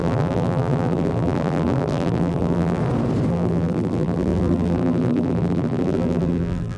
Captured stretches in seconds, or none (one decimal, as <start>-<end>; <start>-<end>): 2.8-3.3